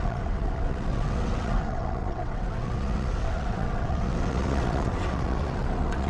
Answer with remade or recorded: remade